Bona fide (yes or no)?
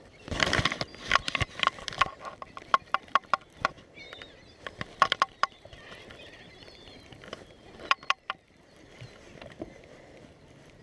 no